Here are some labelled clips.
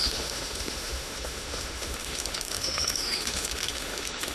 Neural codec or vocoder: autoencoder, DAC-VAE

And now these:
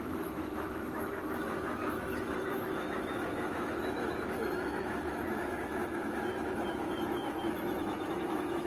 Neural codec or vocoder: autoencoder, DAC-VAE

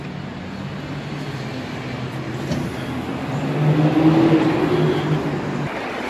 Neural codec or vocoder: none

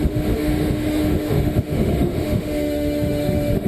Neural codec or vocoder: autoencoder, DAC-VAE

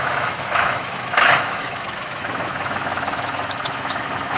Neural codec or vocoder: autoencoder, DAC-VAE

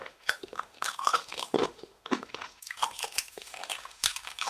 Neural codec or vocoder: autoencoder, DAC-VAE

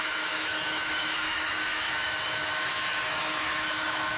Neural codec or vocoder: autoencoder, DAC-VAE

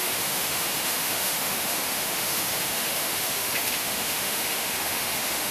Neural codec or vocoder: autoencoder, DAC-VAE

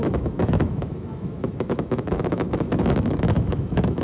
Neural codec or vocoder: autoencoder, DAC-VAE